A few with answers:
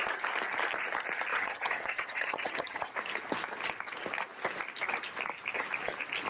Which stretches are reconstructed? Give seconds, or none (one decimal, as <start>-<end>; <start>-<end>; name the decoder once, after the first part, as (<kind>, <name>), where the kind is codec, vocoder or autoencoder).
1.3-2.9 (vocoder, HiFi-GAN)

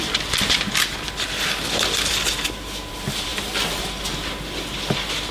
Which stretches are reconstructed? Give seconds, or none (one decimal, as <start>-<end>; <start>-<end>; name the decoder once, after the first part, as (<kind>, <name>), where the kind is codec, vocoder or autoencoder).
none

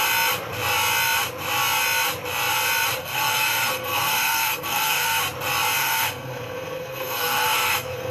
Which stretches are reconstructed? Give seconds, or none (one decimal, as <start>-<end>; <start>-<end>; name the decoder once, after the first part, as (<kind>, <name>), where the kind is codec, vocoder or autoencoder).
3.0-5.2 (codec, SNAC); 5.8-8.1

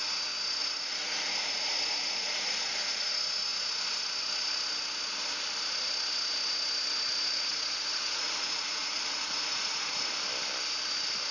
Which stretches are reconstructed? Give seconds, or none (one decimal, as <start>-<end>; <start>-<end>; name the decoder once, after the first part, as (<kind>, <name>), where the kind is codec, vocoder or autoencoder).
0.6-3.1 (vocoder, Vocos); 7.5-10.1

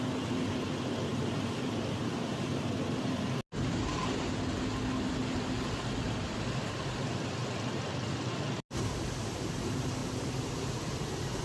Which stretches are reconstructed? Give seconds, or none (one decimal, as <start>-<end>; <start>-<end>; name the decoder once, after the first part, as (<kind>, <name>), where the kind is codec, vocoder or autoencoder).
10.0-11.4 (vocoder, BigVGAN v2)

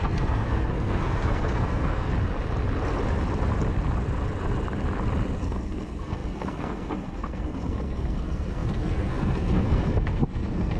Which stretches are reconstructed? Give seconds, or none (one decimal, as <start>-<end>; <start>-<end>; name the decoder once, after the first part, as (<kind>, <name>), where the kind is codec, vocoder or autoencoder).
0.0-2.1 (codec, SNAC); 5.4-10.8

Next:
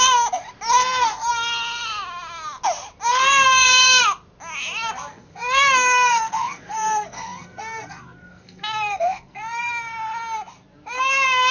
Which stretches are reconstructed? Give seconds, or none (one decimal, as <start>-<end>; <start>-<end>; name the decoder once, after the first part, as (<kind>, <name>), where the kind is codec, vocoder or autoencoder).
0.8-1.3 (codec, SNAC); 3.2-4.0; 5.1-9.7